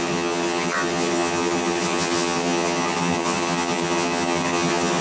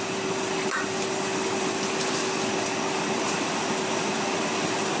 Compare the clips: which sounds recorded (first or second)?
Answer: second